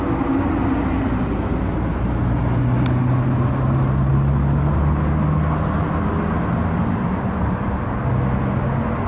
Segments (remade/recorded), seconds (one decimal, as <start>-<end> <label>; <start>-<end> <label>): 0.0-4.1 recorded; 4.1-4.7 remade; 4.7-9.1 recorded